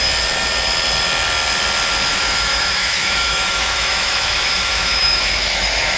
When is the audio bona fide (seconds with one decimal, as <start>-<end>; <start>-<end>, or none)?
0.0-2.1

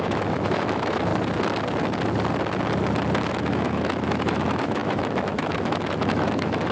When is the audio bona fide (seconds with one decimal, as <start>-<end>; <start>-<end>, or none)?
1.1-3.3

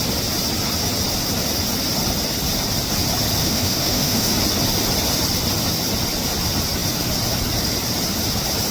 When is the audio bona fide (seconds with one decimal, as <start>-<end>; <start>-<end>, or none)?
0.0-3.4; 4.3-8.7

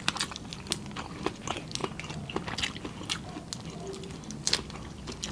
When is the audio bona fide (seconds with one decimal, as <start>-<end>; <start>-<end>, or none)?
0.0-5.3

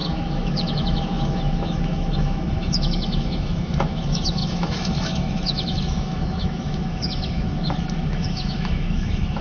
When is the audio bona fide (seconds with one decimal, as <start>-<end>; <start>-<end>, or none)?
none

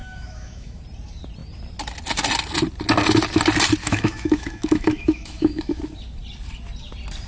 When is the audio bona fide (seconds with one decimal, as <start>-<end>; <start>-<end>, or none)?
0.8-3.8; 5.8-7.3

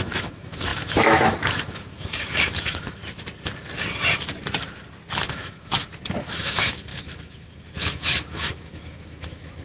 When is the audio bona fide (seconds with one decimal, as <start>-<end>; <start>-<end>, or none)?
3.0-5.3; 5.7-6.3

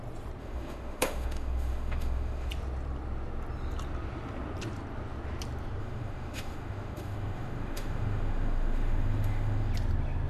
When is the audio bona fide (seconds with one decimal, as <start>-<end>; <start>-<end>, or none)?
0.0-0.4; 2.5-5.8; 9.7-10.3